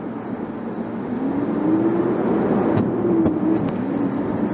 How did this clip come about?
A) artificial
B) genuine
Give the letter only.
B